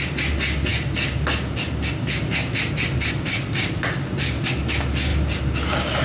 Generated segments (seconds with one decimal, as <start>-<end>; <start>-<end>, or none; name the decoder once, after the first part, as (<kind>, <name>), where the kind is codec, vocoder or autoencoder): none